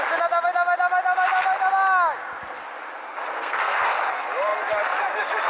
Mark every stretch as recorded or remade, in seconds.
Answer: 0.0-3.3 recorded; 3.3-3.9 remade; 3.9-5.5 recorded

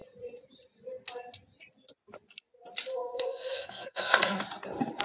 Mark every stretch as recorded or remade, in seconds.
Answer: 0.0-2.9 recorded; 2.9-4.4 remade; 4.4-5.0 recorded

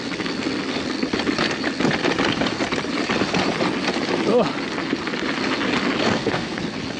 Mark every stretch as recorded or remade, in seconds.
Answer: 0.0-6.0 recorded; 6.0-6.6 remade; 6.6-7.0 recorded

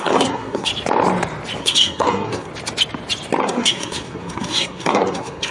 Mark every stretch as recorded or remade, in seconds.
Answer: 0.0-0.7 remade; 0.7-1.6 recorded; 1.6-2.5 remade; 2.5-3.4 recorded; 3.4-5.5 remade

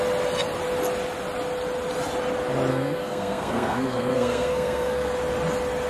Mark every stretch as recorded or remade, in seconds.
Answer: 0.0-2.7 recorded; 2.7-5.1 remade; 5.1-5.9 recorded

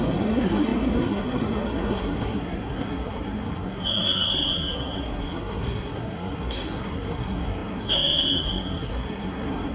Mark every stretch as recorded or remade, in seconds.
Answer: 0.0-9.7 remade

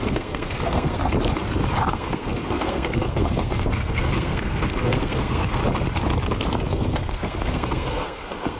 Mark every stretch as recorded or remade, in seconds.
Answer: 0.0-1.0 remade; 1.0-1.9 recorded; 1.9-5.6 remade; 5.6-6.7 recorded; 6.7-8.6 remade

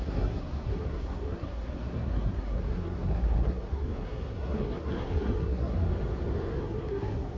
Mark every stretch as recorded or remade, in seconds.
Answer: 0.0-5.9 remade; 5.9-6.5 recorded; 6.5-7.4 remade